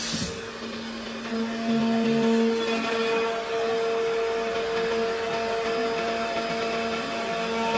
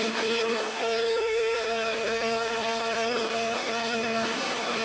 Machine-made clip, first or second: second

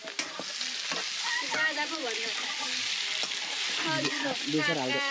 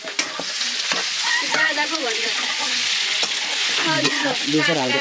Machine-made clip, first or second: second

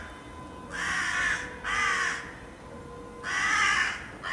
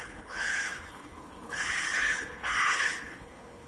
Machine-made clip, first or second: second